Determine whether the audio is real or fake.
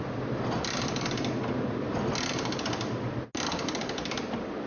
real